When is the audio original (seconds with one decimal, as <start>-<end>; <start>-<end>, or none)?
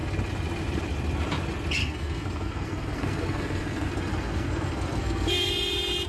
0.0-1.8; 5.5-6.1